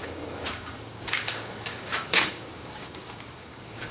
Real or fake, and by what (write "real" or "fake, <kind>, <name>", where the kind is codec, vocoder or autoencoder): fake, codec, DAC